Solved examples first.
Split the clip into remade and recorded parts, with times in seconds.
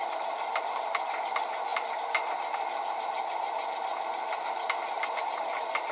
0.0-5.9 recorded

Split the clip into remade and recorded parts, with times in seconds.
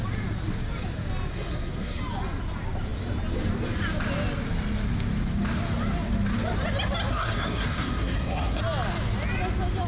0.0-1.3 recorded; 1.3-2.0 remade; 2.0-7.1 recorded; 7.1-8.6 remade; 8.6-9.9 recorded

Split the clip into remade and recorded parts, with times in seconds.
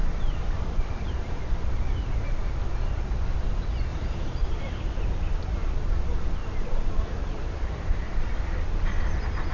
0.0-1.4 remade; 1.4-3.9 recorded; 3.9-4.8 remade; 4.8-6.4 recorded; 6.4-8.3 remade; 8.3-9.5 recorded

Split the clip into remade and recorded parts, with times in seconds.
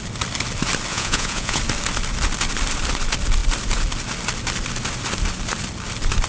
0.0-0.9 recorded; 0.9-1.6 remade; 1.6-6.3 recorded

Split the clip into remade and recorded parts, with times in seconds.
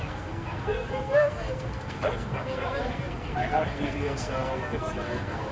0.0-5.5 remade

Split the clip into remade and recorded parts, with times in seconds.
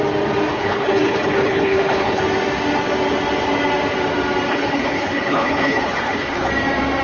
0.0-0.5 recorded; 0.5-2.2 remade; 2.2-4.5 recorded; 4.5-6.5 remade; 6.5-7.0 recorded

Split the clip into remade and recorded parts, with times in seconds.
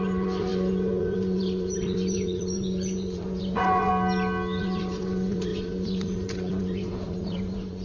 0.0-3.9 remade; 3.9-4.6 recorded; 4.6-7.8 remade